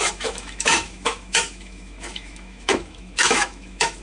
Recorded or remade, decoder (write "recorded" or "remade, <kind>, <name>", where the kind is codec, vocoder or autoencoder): remade, autoencoder, DAC-VAE